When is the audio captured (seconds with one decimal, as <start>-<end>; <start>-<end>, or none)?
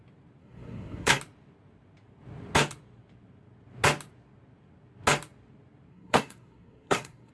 0.0-0.4; 1.2-5.9